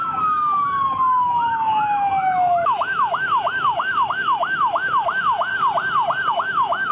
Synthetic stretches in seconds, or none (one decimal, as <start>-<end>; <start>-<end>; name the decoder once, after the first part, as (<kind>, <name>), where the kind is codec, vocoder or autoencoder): 0.0-5.5 (autoencoder, DAC-VAE); 6.3-6.9